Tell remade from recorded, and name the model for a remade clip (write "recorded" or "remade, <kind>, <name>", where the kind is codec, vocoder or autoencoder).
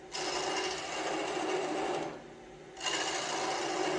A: recorded